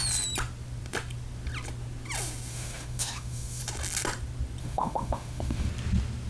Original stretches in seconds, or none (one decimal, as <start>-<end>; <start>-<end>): 0.0-2.5; 3.6-4.6; 5.7-6.3